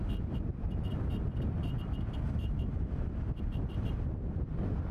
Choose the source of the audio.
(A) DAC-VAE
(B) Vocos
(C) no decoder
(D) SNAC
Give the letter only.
C